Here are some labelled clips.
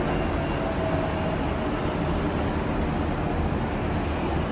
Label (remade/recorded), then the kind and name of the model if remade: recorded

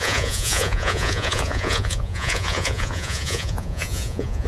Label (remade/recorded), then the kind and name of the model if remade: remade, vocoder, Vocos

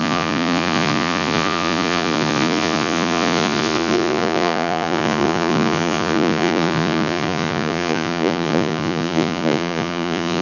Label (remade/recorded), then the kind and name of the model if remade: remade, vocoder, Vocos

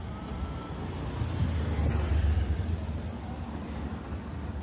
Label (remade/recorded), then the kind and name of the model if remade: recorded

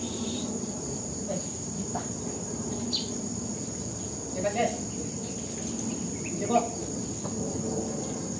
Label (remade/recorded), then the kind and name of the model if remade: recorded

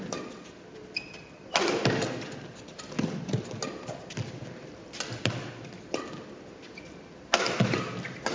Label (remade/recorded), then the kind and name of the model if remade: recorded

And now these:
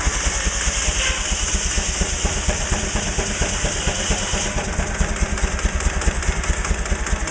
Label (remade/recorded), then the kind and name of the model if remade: recorded